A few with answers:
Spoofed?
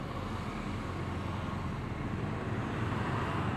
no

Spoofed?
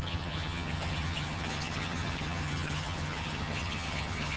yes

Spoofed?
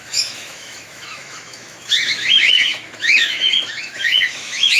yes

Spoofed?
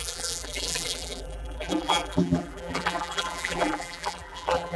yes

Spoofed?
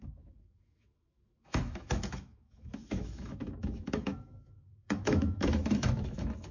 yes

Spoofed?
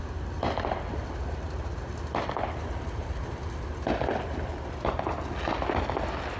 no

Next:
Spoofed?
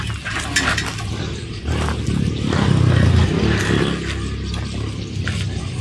no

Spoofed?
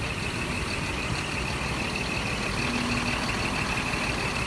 no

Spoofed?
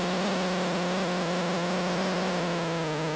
no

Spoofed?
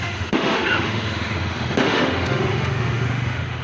yes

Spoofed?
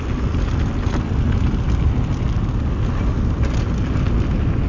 no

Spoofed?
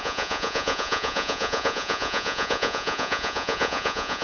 yes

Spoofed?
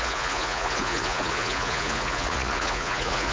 yes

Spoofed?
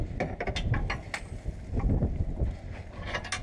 no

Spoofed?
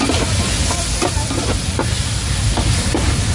no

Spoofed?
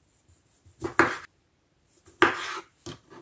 no